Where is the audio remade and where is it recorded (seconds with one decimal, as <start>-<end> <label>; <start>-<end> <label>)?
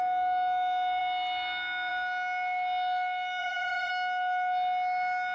0.0-3.4 recorded; 3.4-3.9 remade; 3.9-5.3 recorded